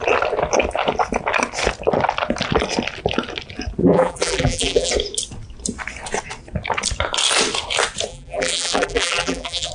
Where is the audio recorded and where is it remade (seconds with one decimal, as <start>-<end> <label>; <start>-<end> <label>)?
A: 0.0-3.8 recorded; 3.8-4.9 remade; 4.9-8.1 recorded; 8.1-9.7 remade